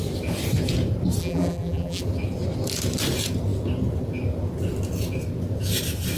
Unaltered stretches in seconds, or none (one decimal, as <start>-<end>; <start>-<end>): 0.0-1.2; 2.0-6.2